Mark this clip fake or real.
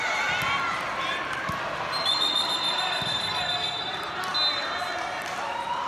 real